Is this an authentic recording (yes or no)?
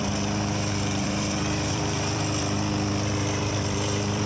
no